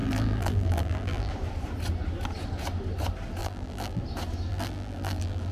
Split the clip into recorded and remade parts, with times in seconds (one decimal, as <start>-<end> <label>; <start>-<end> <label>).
0.0-1.3 remade; 1.3-3.4 recorded; 3.4-4.0 remade; 4.0-4.5 recorded; 4.5-5.5 remade